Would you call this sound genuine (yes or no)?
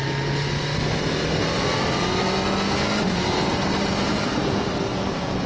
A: yes